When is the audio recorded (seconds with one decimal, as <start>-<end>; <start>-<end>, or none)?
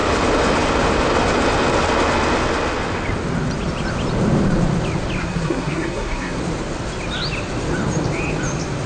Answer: 0.0-5.2; 6.4-8.9